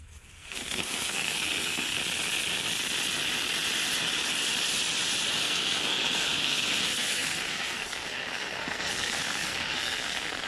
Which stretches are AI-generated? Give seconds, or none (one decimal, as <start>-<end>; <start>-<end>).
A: 0.0-2.0; 5.4-10.5